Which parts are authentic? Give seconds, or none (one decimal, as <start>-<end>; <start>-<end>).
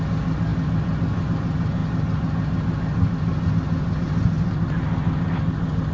0.0-5.9